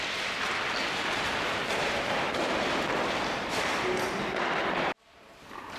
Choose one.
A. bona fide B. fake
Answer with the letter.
A